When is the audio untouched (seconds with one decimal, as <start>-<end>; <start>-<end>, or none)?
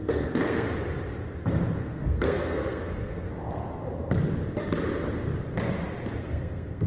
0.7-1.8; 3.3-6.2